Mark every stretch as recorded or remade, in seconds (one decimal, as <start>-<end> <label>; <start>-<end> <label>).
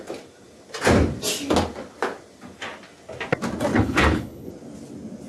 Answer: 0.0-3.7 recorded; 3.7-4.5 remade; 4.5-5.3 recorded